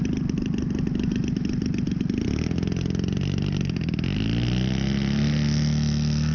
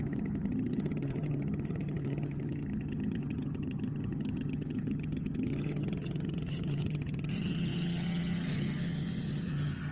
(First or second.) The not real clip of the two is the second